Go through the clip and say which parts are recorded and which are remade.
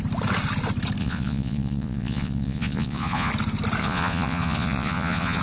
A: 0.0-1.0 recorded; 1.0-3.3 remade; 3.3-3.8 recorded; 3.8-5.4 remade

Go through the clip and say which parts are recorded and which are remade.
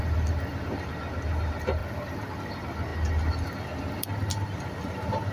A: 0.0-1.8 recorded; 1.8-2.3 remade; 2.3-5.3 recorded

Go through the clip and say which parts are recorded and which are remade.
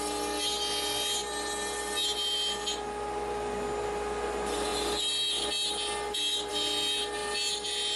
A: 0.0-8.0 recorded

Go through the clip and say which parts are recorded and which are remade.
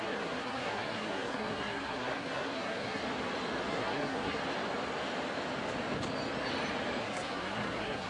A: 0.0-3.0 remade; 3.0-3.7 recorded; 3.7-4.4 remade; 4.4-7.0 recorded; 7.0-8.1 remade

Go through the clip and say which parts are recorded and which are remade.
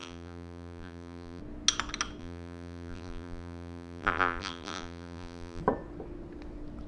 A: 0.0-1.4 remade; 1.4-2.2 recorded; 2.2-5.6 remade; 5.6-6.9 recorded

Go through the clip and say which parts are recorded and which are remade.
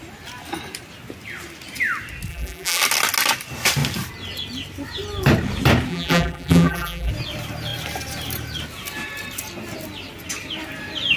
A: 0.0-2.3 recorded; 2.3-2.8 remade; 2.8-5.9 recorded; 5.9-7.1 remade; 7.1-11.2 recorded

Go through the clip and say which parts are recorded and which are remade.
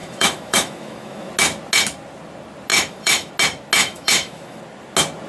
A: 0.0-1.3 remade; 1.3-2.7 recorded; 2.7-3.3 remade; 3.3-3.8 recorded; 3.8-4.6 remade; 4.6-5.3 recorded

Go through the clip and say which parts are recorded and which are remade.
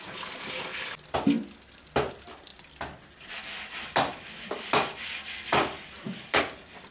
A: 0.0-6.9 recorded